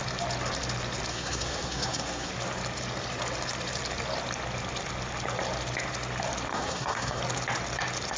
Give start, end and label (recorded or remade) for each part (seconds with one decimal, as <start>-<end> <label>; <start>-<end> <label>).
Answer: 0.0-1.1 recorded; 1.1-2.3 remade; 2.3-6.5 recorded; 6.5-7.2 remade; 7.2-8.2 recorded